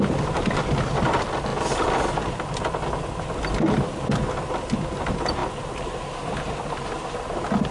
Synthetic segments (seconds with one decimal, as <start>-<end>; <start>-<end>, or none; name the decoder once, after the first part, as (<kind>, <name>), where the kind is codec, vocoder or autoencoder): none